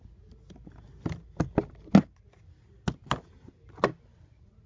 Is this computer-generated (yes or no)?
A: no